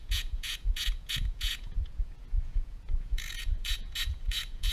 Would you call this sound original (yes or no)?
no